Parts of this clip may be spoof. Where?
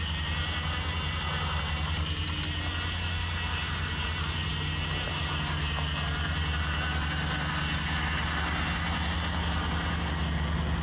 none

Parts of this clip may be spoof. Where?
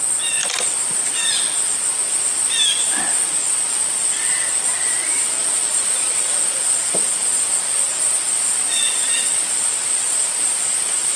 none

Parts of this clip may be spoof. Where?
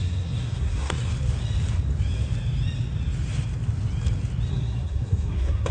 0.0-1.1 (codec, SNAC); 4.5-5.7